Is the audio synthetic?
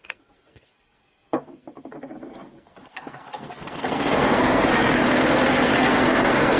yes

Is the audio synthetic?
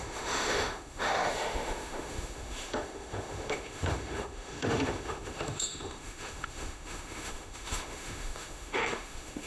yes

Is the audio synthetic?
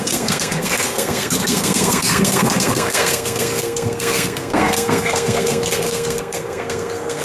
yes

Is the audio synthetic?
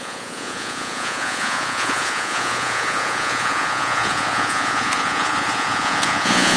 yes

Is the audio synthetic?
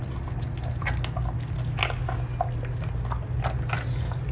no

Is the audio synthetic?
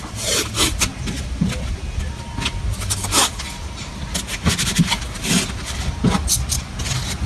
no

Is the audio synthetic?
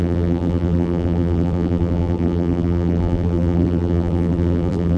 yes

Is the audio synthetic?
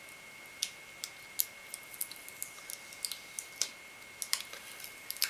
no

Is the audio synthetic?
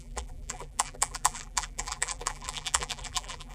yes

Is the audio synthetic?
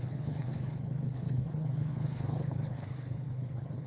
yes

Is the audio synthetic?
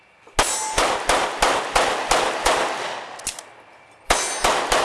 no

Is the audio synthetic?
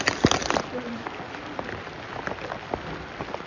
no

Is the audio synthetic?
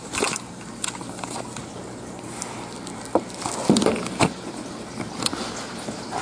no